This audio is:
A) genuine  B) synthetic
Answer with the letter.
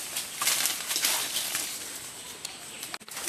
A